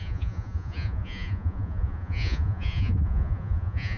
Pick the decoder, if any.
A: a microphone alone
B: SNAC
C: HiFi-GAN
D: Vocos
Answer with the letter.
D